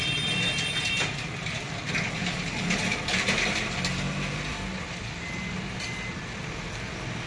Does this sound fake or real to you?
real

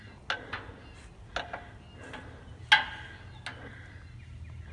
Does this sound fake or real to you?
real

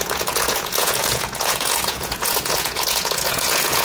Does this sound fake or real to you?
fake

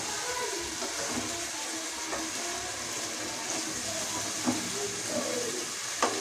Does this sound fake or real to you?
real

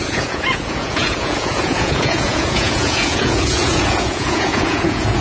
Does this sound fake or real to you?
fake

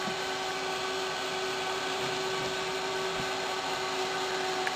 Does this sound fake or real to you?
real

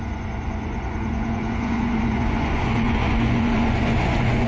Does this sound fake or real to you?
fake